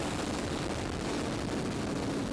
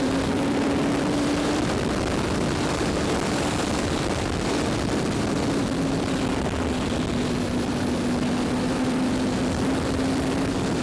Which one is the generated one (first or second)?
second